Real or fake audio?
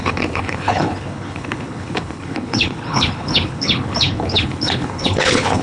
fake